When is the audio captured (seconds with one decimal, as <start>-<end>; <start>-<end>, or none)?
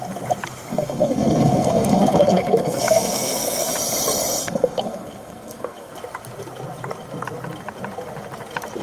0.0-0.7; 3.7-4.4; 5.9-8.8